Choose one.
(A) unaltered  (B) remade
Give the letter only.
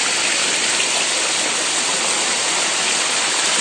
A